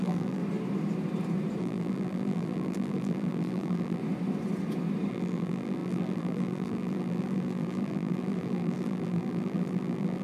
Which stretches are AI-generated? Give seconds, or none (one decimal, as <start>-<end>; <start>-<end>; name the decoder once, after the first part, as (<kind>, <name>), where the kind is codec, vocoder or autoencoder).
0.0-0.4 (vocoder, BigVGAN v2); 1.6-4.0; 5.1-10.2